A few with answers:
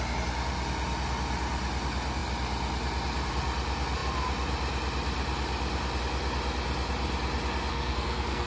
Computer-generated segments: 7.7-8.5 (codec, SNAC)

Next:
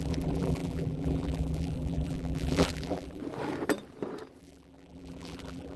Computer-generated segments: 0.0-3.2 (vocoder, BigVGAN v2); 4.4-5.8

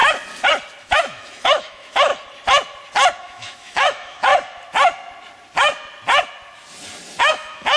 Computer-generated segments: 0.8-2.1 (autoencoder, DAC-VAE); 3.2-4.3; 7.2-7.8